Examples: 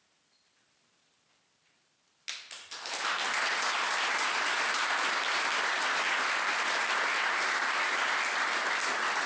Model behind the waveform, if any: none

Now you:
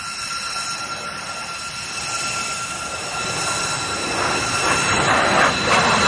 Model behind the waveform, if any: none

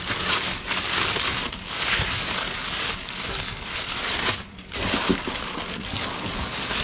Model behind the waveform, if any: codec, DAC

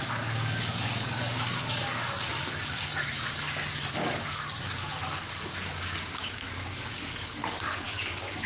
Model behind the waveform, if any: codec, DAC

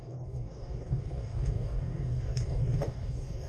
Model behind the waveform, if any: codec, DAC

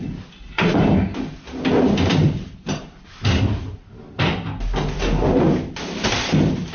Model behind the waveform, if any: none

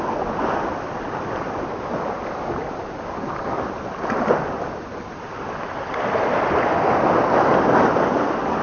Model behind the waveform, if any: none